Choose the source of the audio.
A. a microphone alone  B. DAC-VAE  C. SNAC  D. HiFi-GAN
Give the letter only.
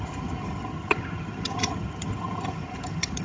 D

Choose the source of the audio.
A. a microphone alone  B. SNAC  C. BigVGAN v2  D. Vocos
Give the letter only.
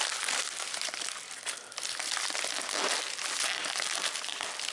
A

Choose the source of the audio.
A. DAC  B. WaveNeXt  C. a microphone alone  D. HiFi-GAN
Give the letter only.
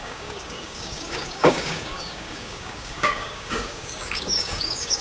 A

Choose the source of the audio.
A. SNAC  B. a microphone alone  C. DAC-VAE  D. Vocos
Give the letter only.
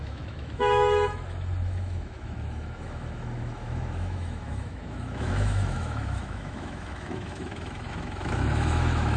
C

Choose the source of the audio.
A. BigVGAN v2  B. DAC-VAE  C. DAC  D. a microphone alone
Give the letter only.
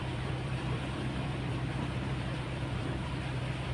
A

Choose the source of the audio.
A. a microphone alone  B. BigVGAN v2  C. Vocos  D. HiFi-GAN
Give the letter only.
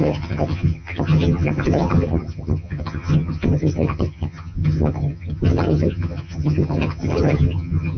D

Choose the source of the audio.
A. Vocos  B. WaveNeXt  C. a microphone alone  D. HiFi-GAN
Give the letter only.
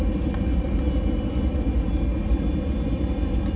C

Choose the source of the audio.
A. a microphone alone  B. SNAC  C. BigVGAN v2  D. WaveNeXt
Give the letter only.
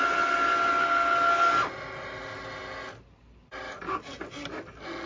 A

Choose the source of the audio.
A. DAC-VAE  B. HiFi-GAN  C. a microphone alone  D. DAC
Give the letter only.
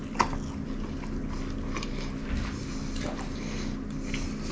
C